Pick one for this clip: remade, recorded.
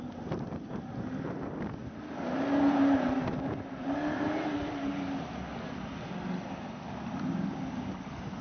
recorded